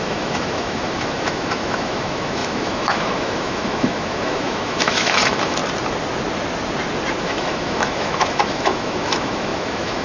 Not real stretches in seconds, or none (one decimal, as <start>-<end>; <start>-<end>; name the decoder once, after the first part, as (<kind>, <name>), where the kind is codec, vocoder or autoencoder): 0.0-5.6 (autoencoder, DAC-VAE); 7.2-10.0